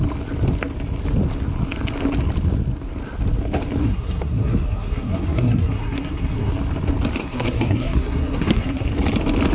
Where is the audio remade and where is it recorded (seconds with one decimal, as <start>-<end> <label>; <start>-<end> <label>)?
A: 0.0-3.8 recorded; 3.8-6.5 remade; 6.5-7.2 recorded; 7.2-8.9 remade; 8.9-9.5 recorded